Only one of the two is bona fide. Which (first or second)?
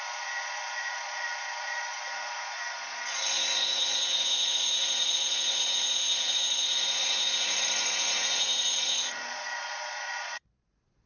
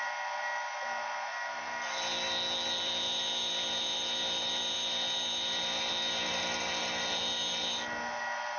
second